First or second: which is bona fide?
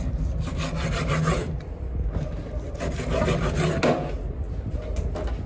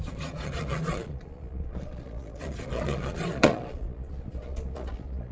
first